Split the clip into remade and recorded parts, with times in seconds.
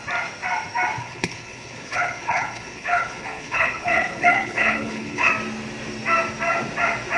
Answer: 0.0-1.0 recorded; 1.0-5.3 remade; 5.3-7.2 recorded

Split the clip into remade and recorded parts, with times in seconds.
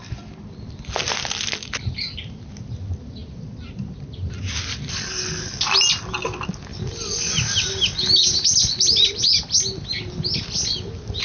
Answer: 0.0-11.2 recorded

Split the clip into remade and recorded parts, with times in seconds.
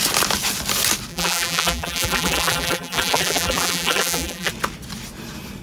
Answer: 0.0-1.1 recorded; 1.1-4.5 remade; 4.5-5.6 recorded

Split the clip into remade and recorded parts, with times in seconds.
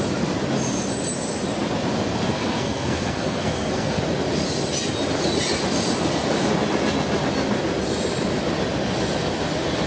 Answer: 0.0-2.3 recorded; 2.3-4.0 remade; 4.0-9.9 recorded